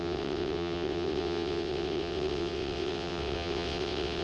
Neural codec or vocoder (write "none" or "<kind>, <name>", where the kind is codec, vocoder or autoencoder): vocoder, WaveNeXt